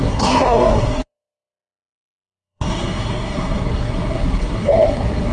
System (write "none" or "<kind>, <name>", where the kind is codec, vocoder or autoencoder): codec, SNAC